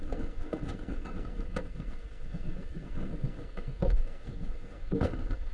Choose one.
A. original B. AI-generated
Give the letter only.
B